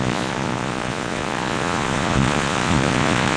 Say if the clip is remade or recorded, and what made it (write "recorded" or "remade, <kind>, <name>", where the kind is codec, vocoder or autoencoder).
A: remade, vocoder, Vocos